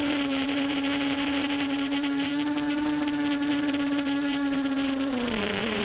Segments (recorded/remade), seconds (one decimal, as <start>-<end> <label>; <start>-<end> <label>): 0.0-2.3 remade; 2.3-3.5 recorded; 3.5-5.8 remade